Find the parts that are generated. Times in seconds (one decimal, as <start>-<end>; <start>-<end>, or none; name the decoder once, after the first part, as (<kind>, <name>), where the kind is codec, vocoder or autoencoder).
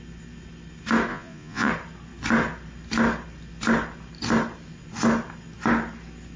1.1-1.7 (vocoder, Vocos)